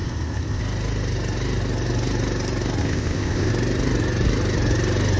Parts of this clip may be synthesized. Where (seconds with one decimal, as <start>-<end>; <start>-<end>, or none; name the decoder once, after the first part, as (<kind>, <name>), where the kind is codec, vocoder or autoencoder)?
0.0-0.6 (codec, ZipCodec); 2.8-3.5